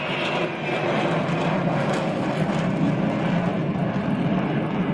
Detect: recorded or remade recorded